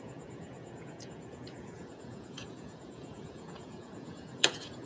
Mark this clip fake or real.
fake